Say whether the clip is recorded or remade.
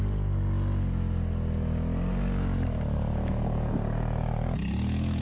recorded